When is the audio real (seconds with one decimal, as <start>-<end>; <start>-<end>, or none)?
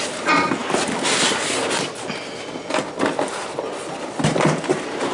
0.0-5.1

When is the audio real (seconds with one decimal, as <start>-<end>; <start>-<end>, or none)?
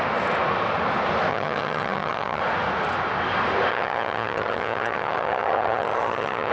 0.0-1.3; 2.4-3.7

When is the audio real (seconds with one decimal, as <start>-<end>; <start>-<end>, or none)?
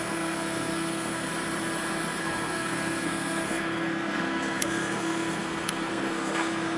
1.3-2.2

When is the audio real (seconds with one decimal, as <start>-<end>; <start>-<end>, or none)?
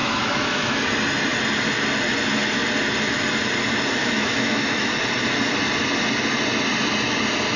0.8-4.0; 4.9-7.6